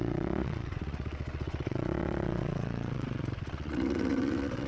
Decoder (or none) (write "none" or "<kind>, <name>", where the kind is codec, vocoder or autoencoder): vocoder, WaveNeXt